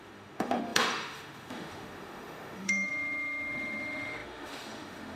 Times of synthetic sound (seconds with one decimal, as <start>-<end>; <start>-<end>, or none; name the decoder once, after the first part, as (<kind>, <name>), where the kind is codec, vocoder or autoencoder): 0.0-5.2 (autoencoder, DAC-VAE)